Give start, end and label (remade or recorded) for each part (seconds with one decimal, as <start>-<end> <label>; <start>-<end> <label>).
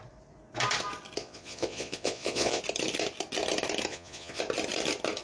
0.0-1.2 recorded; 1.2-2.6 remade; 2.6-3.9 recorded; 3.9-4.4 remade; 4.4-5.2 recorded